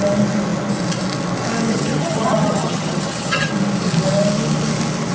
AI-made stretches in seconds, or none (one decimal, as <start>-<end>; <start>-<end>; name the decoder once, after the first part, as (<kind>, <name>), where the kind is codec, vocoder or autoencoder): 1.7-3.5 (vocoder, HiFi-GAN)